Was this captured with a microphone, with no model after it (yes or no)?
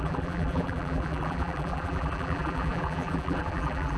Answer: no